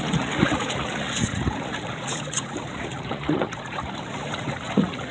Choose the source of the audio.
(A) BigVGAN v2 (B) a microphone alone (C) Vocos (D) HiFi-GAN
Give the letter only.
C